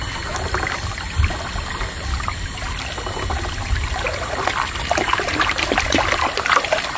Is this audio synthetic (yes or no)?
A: no